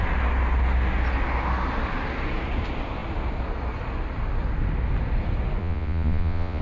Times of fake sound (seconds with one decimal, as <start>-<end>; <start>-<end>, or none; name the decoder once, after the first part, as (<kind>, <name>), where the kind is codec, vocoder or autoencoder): 5.6-6.6 (vocoder, Vocos)